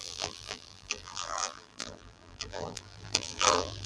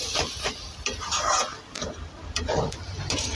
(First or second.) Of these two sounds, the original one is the second